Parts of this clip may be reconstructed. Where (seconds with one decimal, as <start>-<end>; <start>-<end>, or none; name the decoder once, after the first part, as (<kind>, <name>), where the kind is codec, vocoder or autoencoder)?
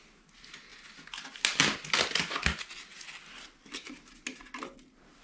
none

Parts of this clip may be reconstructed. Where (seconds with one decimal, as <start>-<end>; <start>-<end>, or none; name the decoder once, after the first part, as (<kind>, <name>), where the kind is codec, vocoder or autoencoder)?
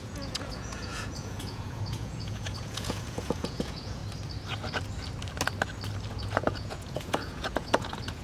0.0-4.0 (vocoder, Vocos); 6.1-8.2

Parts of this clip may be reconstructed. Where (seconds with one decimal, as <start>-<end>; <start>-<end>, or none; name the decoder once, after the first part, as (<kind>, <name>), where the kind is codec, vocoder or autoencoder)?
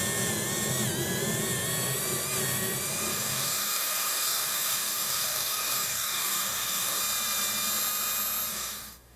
3.1-7.0 (codec, DAC); 8.5-9.2